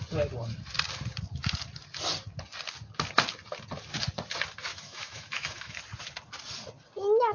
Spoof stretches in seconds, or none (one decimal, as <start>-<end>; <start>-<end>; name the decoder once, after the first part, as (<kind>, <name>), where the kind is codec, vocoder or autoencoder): 4.7-5.8 (autoencoder, DAC-VAE)